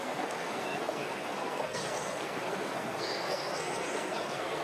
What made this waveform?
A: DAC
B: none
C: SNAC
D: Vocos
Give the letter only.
C